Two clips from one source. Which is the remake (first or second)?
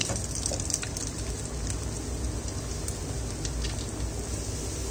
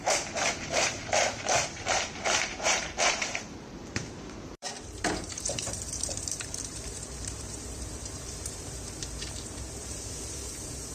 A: second